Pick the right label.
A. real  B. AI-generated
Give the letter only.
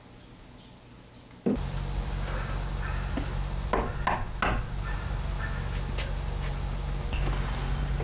A